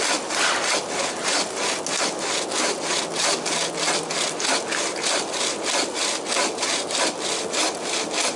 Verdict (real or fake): real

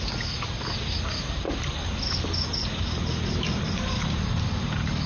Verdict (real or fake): real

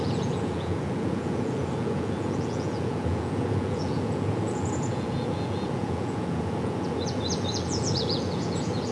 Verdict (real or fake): fake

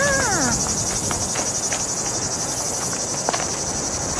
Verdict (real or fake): real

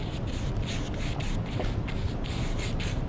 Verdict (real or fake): real